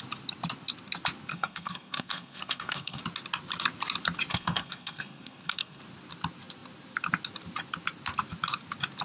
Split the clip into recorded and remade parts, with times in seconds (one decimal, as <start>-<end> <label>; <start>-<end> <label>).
0.0-1.3 recorded; 1.3-3.0 remade; 3.0-4.3 recorded; 4.3-5.8 remade; 5.8-9.0 recorded